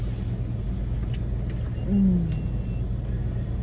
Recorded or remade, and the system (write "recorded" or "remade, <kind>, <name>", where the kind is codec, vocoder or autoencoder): recorded